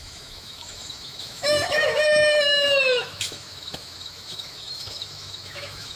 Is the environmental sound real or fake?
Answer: fake